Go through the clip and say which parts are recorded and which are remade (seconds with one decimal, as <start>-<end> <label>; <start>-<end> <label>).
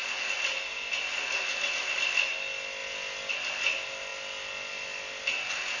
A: 0.0-5.8 recorded